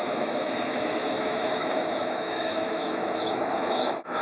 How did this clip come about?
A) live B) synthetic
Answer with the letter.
B